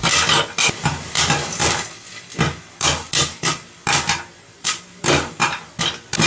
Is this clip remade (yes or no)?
no